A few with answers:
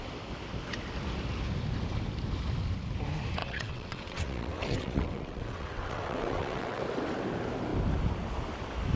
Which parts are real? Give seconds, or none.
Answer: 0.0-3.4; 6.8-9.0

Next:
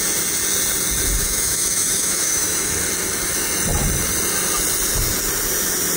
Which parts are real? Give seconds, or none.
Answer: 0.0-1.2; 2.7-6.0